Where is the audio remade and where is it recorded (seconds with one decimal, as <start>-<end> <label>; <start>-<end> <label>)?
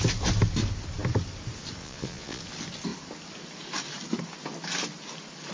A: 0.0-1.8 recorded; 1.8-2.4 remade; 2.4-5.5 recorded